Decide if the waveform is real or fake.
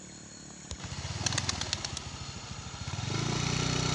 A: real